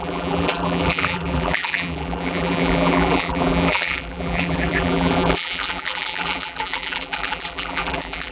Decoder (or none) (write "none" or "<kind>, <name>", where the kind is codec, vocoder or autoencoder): vocoder, BigVGAN v2